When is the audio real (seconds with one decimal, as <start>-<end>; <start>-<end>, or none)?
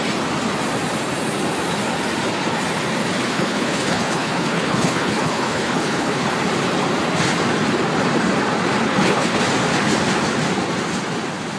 0.0-3.2; 6.3-8.8; 9.4-11.6